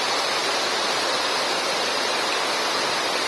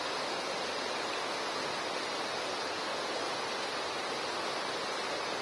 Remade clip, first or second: first